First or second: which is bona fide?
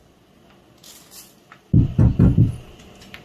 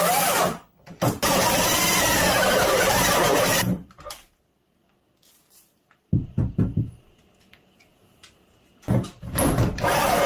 first